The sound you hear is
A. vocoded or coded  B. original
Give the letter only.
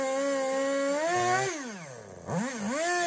B